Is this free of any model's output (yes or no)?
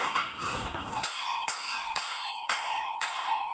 no